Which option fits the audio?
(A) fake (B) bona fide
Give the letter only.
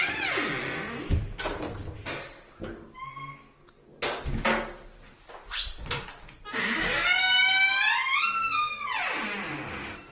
B